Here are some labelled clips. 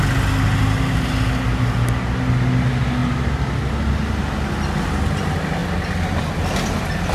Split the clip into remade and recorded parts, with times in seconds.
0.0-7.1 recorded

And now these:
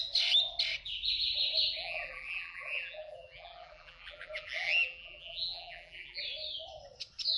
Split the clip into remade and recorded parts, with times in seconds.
0.0-1.8 recorded; 1.8-6.2 remade; 6.2-7.4 recorded